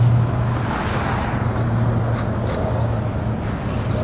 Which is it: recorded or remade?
recorded